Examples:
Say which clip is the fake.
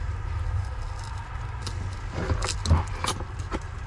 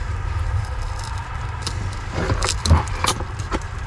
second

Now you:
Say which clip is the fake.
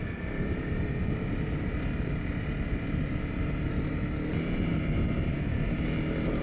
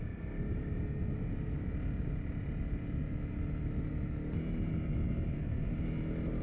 first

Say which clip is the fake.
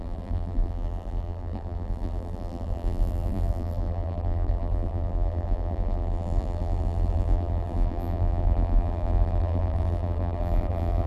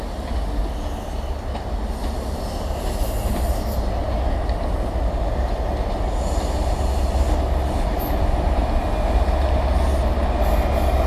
first